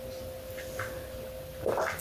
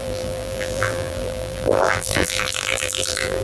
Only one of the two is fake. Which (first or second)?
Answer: second